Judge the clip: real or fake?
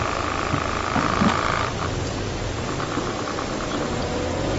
real